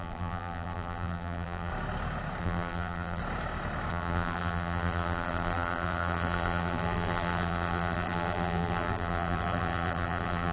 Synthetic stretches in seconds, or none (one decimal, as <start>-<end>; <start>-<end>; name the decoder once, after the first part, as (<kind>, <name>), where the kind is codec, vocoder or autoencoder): 0.0-1.7 (vocoder, BigVGAN v2); 2.4-3.2; 3.9-10.5